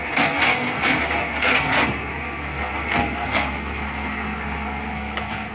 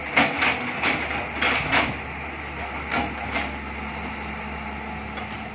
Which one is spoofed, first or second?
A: first